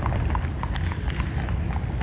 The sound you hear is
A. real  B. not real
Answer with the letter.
A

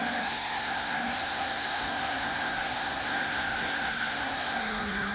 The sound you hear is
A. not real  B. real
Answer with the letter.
A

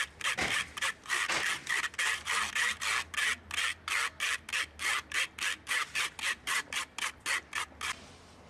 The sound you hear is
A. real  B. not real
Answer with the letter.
A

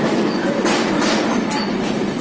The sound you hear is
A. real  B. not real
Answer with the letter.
A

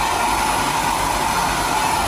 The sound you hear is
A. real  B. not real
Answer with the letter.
A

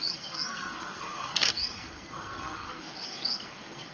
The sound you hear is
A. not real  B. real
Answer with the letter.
A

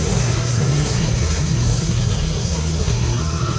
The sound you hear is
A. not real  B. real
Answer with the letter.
A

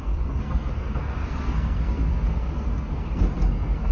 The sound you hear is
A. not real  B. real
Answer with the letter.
A